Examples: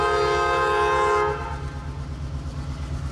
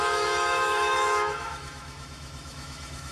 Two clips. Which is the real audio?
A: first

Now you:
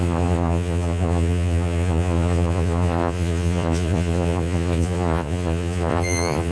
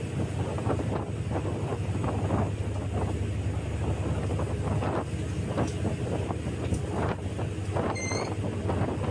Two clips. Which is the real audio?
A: second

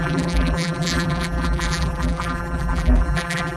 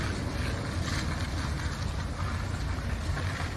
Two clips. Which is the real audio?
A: second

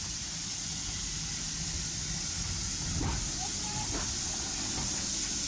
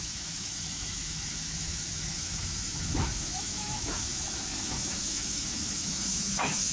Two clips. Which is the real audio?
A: first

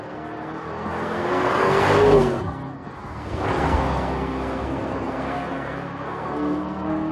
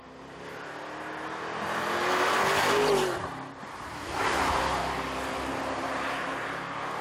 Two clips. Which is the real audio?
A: second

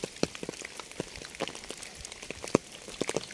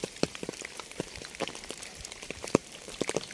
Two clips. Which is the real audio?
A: first